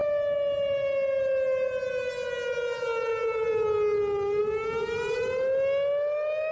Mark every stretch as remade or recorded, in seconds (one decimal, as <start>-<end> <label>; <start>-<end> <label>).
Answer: 0.0-6.5 recorded